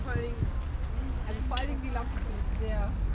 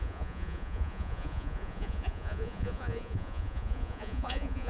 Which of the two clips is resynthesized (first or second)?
second